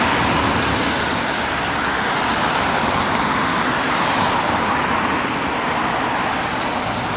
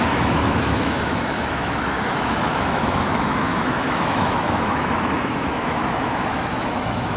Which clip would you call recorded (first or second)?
first